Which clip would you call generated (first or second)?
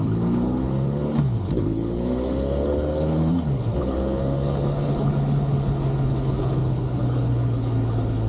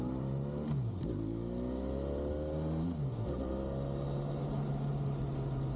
first